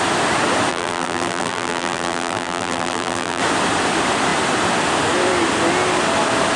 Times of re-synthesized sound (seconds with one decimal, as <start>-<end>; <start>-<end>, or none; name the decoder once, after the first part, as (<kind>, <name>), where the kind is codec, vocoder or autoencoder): 0.7-3.4 (vocoder, BigVGAN v2)